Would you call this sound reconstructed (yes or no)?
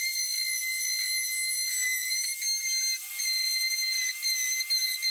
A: no